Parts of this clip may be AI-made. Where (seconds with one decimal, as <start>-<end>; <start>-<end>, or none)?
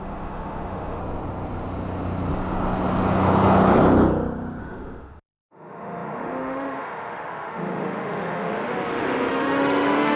0.0-1.0; 4.6-10.2